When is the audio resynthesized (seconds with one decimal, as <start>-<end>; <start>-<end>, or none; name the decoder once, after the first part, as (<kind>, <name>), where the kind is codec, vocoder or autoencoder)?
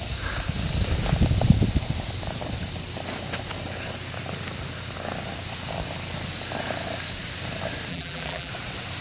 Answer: 7.9-8.5 (vocoder, BigVGAN v2)